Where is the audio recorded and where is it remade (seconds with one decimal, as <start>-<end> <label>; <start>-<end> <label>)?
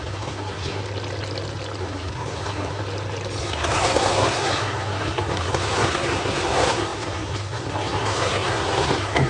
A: 0.0-0.8 remade; 0.8-1.8 recorded; 1.8-2.8 remade; 2.8-3.4 recorded; 3.4-9.3 remade